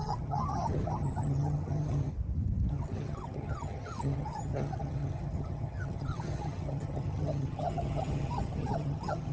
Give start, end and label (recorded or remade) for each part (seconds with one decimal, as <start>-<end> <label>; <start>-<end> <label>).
0.0-2.1 remade; 2.1-2.7 recorded; 2.7-9.3 remade